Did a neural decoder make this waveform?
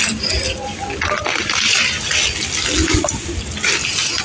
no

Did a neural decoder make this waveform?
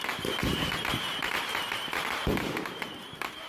yes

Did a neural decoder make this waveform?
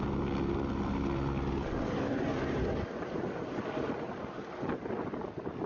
no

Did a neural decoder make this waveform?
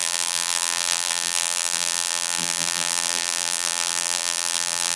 yes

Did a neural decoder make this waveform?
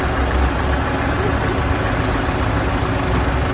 no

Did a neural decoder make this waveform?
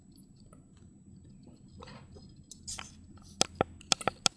no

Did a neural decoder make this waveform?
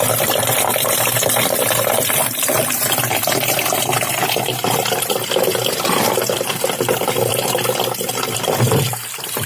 yes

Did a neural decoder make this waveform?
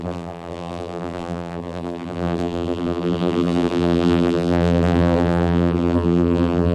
yes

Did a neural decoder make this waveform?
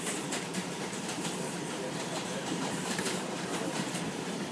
yes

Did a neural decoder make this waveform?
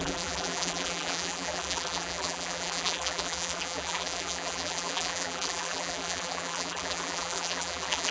yes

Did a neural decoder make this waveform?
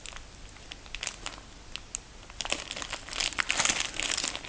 no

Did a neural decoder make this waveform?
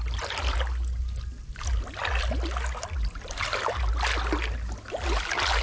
no